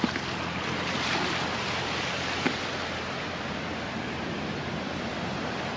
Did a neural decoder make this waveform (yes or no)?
yes